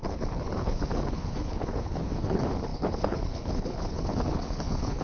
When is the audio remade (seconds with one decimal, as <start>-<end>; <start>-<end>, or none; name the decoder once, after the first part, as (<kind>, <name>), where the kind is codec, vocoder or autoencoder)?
0.0-5.0 (codec, HILCodec)